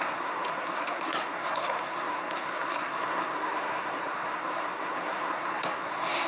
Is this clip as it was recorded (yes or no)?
no